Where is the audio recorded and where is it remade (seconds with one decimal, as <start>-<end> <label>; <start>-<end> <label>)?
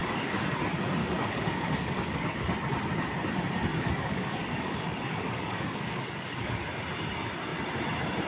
0.0-0.5 remade; 0.5-1.0 recorded; 1.0-2.5 remade; 2.5-3.7 recorded; 3.7-6.6 remade; 6.6-8.3 recorded